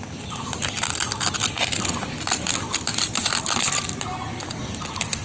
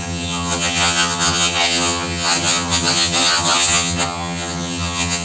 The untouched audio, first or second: first